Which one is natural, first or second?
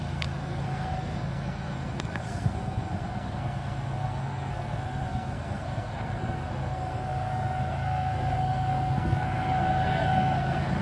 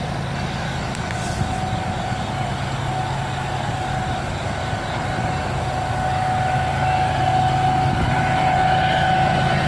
second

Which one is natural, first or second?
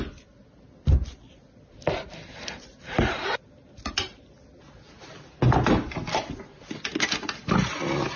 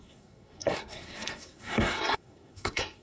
first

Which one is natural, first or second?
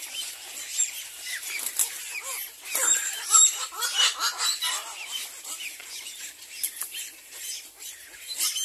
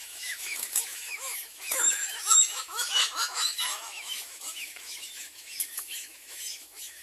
first